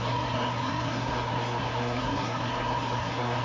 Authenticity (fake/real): fake